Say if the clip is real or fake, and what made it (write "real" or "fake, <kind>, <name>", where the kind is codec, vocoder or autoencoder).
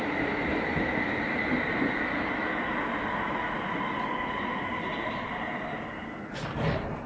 real